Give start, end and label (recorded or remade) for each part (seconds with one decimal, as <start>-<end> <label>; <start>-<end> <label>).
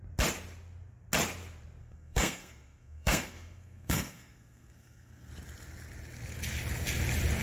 0.0-1.8 recorded; 1.8-5.3 remade; 5.3-7.4 recorded